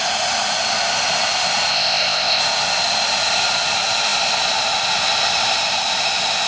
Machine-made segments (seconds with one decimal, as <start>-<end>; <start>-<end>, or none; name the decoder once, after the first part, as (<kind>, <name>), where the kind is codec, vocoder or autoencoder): 1.7-2.4 (codec, ZipCodec)